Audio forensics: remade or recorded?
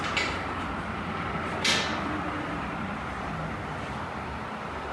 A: recorded